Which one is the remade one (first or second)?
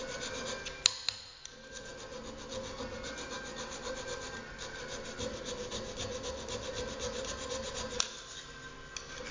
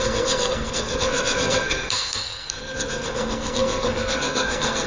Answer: second